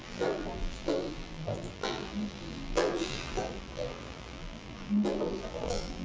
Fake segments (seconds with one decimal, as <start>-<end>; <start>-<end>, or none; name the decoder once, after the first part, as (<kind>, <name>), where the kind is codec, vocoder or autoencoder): 0.0-6.0 (vocoder, BigVGAN v2)